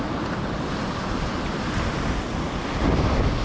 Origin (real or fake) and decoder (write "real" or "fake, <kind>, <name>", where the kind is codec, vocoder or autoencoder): real